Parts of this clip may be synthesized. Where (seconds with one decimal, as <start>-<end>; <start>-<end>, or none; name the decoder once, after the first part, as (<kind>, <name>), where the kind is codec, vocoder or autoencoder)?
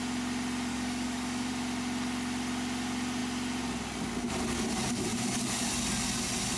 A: 0.7-1.5 (codec, DAC); 5.1-5.7